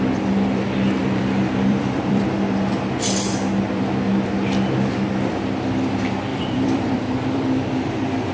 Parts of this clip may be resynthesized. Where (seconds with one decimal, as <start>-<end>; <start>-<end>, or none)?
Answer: 1.0-2.2; 6.3-8.3